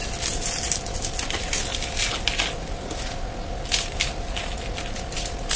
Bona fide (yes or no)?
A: yes